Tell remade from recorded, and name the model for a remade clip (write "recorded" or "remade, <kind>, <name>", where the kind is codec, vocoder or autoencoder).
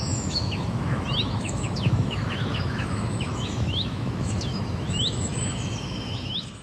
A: remade, autoencoder, DAC-VAE